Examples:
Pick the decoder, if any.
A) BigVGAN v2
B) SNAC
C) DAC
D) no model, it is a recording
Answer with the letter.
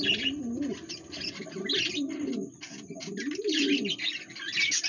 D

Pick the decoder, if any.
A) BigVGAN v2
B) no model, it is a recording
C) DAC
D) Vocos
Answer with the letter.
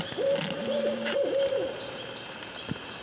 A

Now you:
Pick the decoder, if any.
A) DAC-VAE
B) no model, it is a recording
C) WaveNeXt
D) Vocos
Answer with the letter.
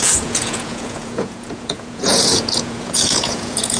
D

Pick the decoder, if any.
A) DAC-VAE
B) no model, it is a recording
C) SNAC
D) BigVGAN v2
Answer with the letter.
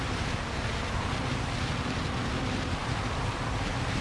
D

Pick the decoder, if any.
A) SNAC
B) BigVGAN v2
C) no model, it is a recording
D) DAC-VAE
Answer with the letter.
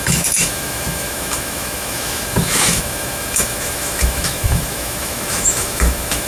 D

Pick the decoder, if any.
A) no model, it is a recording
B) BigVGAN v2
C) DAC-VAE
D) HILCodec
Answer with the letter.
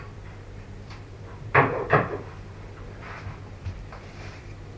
B